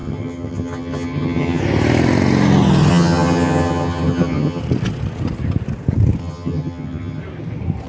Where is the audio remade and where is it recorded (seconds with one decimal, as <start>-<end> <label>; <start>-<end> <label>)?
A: 0.0-1.6 remade; 1.6-2.9 recorded; 2.9-4.6 remade; 4.6-6.2 recorded; 6.2-7.2 remade; 7.2-7.9 recorded